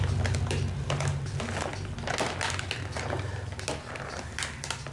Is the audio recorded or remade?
recorded